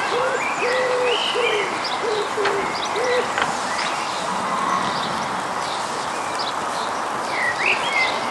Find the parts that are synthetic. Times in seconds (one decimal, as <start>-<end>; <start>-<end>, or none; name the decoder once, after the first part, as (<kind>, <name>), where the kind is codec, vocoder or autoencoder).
none